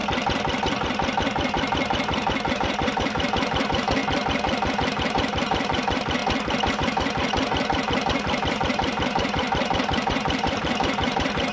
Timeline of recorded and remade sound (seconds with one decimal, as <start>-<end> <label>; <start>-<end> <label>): 0.0-2.5 recorded; 2.5-4.0 remade; 4.0-4.7 recorded; 4.7-6.2 remade; 6.2-6.7 recorded; 6.7-11.5 remade